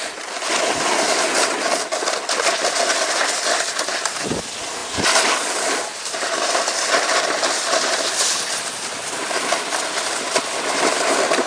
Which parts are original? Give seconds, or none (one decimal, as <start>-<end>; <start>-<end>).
0.0-4.8; 9.7-11.5